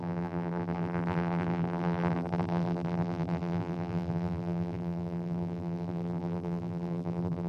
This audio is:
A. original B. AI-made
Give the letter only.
B